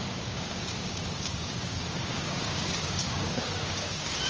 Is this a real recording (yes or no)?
no